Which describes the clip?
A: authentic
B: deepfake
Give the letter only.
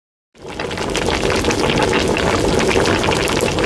A